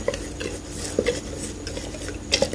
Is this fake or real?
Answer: real